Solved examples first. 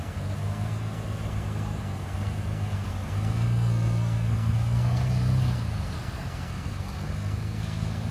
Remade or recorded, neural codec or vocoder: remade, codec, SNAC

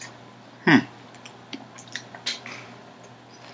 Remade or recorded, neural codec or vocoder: recorded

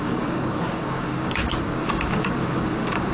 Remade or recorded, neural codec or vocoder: remade, codec, DAC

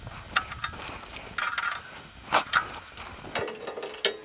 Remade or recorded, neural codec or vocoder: recorded